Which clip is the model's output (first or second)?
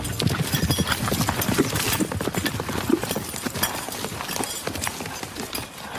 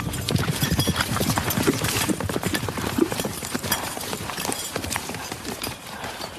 second